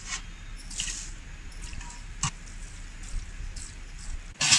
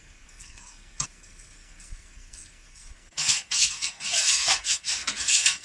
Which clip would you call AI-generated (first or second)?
second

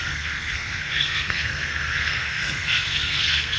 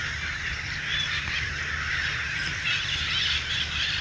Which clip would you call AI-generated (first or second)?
first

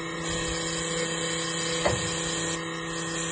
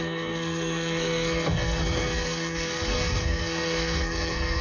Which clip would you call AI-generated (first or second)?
second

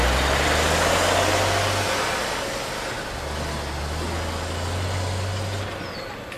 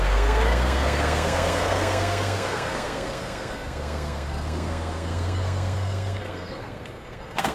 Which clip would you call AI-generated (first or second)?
second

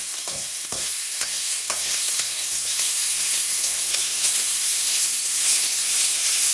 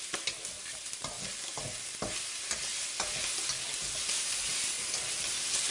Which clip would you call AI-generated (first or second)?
first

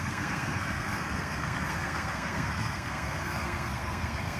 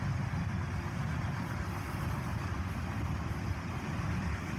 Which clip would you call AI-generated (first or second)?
first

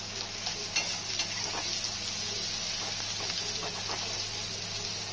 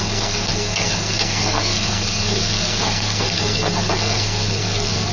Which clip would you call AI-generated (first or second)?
second